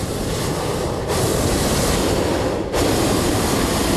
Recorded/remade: recorded